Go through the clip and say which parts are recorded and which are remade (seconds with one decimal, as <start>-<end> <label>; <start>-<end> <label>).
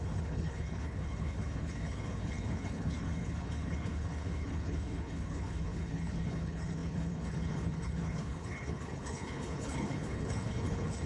0.0-11.1 remade